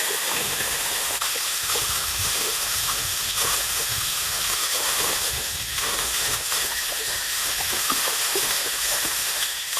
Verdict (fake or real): fake